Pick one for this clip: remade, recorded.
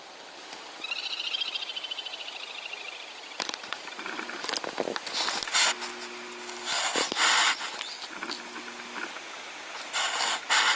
recorded